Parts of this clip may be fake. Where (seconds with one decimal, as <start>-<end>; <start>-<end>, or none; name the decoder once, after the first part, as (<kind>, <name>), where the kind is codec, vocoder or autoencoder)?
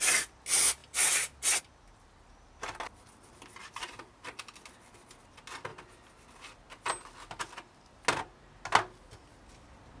3.6-4.4 (vocoder, BigVGAN v2)